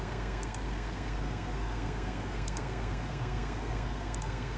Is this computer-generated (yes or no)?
yes